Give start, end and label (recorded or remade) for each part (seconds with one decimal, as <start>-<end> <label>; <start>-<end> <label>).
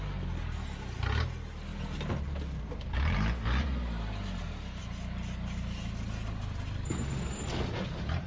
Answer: 0.0-8.3 recorded